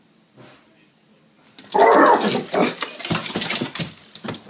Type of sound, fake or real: real